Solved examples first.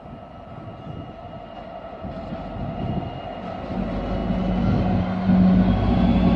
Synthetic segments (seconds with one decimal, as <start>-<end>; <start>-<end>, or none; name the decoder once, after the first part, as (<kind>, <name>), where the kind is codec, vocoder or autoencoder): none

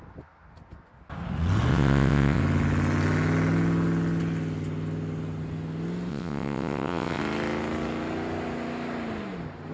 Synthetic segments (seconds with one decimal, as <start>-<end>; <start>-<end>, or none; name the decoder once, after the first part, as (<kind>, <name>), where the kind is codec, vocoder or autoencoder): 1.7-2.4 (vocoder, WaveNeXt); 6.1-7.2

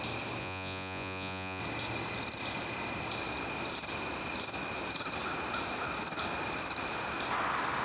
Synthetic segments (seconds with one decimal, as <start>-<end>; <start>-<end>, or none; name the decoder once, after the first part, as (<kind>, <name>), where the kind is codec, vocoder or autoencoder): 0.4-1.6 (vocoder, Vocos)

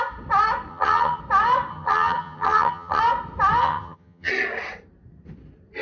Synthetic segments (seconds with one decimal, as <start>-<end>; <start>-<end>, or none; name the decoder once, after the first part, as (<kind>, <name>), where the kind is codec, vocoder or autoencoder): 0.7-1.2 (vocoder, HiFi-GAN); 1.7-3.0; 3.6-4.3